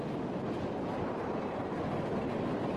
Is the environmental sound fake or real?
real